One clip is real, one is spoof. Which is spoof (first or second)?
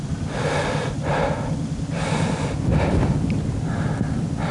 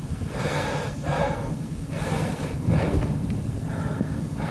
second